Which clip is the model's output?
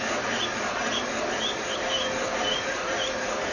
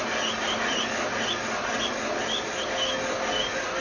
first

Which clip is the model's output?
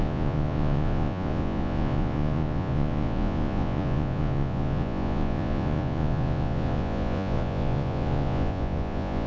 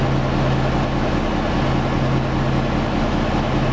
first